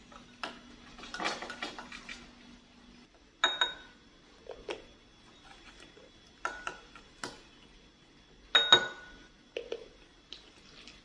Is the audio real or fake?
real